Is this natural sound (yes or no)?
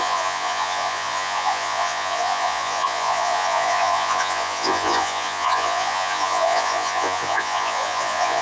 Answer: no